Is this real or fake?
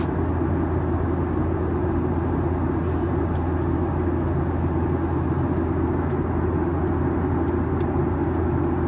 real